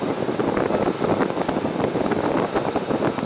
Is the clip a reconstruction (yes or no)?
no